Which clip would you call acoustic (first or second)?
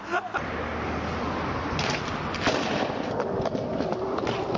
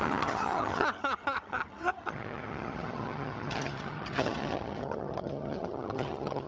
first